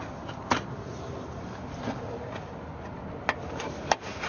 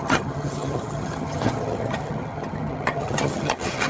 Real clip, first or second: first